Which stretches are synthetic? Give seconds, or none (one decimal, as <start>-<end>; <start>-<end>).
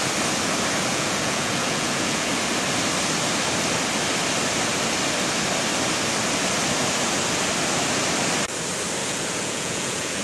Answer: 0.9-2.3; 9.0-10.2